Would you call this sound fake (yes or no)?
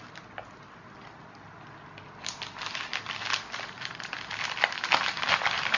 no